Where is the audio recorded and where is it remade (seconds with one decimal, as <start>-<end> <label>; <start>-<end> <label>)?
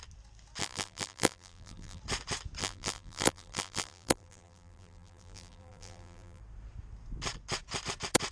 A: 0.0-0.6 recorded; 0.6-2.0 remade; 2.0-2.6 recorded; 2.6-6.4 remade; 6.4-8.3 recorded